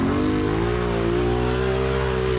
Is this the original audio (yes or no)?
yes